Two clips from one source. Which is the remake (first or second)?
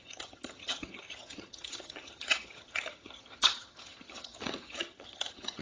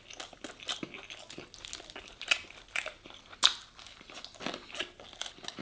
first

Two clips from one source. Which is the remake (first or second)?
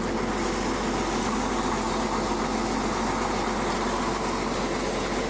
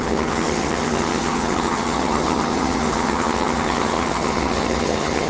second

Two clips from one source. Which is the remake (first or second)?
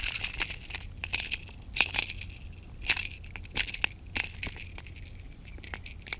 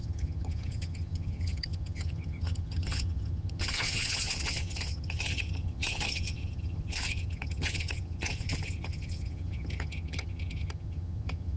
second